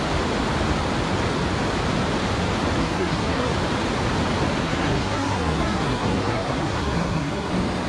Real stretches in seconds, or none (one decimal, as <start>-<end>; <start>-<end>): 0.0-2.8; 3.5-4.6; 7.5-7.9